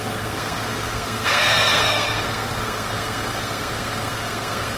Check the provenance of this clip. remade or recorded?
remade